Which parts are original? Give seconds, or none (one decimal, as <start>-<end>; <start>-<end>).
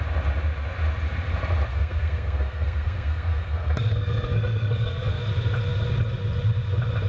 0.0-1.7; 5.2-7.1